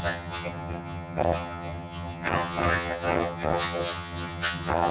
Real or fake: fake